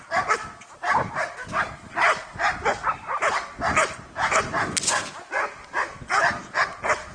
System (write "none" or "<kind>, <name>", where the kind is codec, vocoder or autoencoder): none